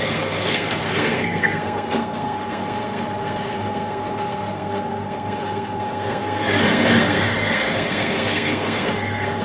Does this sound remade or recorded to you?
remade